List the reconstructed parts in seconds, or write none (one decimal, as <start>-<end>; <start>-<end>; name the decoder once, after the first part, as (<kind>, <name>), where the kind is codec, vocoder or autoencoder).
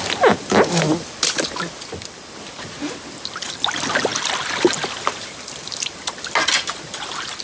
none